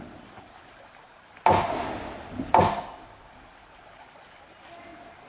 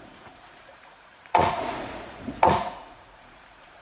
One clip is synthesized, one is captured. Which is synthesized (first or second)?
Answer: second